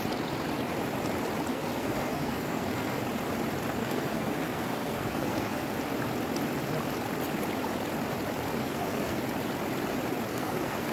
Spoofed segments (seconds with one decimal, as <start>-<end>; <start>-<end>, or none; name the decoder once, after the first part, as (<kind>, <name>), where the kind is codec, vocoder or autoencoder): 1.5-3.0 (codec, SNAC); 3.8-5.8; 8.6-9.2; 10.3-10.9